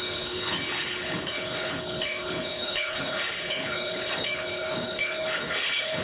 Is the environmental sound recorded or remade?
remade